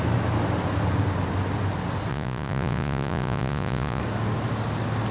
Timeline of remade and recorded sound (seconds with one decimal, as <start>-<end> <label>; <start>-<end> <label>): 0.0-2.1 recorded; 2.1-4.0 remade; 4.0-5.1 recorded